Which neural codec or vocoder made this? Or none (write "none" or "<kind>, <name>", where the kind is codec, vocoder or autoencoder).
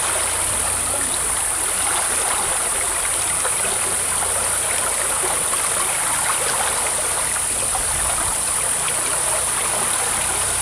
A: vocoder, BigVGAN v2